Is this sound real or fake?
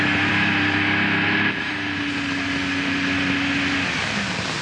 real